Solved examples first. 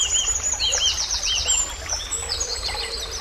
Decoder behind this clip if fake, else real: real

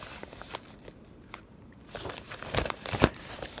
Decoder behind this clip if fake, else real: fake, vocoder, BigVGAN v2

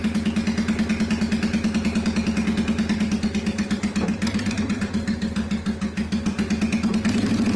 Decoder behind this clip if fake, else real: real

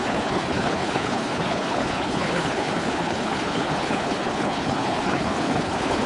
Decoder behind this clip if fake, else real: fake, codec, HILCodec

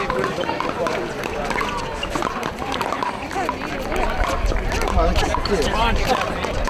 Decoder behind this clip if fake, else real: real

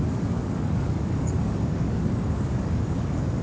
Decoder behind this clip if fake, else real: fake, codec, DAC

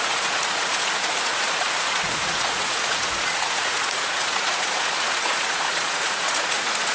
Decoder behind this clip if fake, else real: fake, vocoder, Vocos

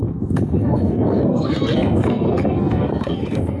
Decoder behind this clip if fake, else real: fake, codec, SNAC